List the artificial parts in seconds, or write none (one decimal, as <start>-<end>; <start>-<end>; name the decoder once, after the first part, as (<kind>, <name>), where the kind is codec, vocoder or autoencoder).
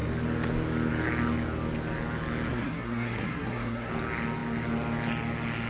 2.5-3.9 (codec, SNAC)